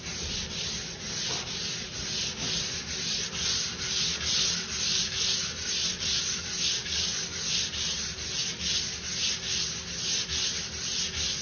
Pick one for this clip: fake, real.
real